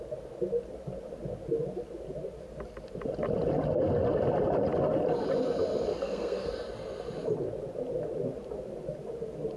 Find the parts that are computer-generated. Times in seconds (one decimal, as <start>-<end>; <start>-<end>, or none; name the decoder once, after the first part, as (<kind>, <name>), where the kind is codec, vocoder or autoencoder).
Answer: 5.9-6.5 (codec, SNAC)